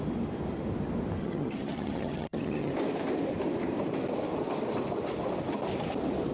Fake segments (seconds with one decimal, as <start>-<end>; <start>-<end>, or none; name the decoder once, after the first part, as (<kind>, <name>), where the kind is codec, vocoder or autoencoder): 1.2-2.7 (vocoder, HiFi-GAN)